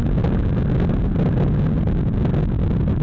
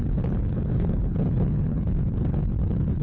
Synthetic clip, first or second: second